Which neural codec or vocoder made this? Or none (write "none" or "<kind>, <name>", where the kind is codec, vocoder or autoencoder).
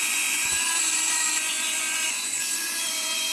vocoder, Vocos